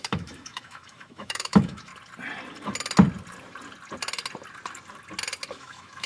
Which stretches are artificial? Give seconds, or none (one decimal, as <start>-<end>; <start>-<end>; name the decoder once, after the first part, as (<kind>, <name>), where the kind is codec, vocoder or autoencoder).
0.0-1.9 (autoencoder, DAC-VAE); 5.5-6.1